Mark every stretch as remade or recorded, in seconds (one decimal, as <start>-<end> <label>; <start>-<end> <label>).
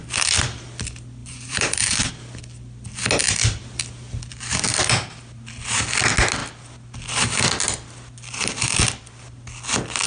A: 0.0-1.2 recorded; 1.2-2.1 remade; 2.1-10.1 recorded